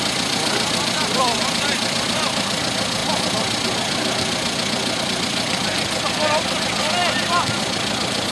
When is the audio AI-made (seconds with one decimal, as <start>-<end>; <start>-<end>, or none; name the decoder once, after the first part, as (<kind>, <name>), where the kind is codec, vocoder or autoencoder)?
0.0-3.0 (vocoder, BigVGAN v2); 5.0-7.0; 7.6-8.3